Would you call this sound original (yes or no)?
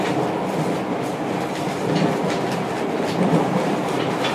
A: yes